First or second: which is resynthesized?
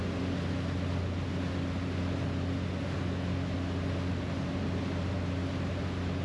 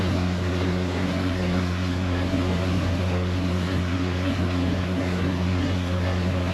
second